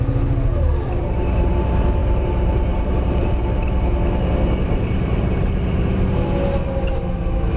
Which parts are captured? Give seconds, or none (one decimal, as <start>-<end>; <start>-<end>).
0.0-1.0; 1.5-2.0; 3.3-7.6

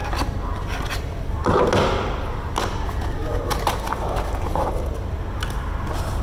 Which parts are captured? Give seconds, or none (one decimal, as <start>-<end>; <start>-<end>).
0.0-3.2; 4.7-6.2

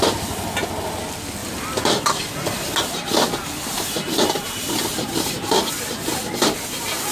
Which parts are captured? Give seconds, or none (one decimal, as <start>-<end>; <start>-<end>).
0.0-1.4; 5.7-7.1